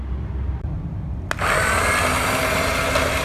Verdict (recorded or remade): recorded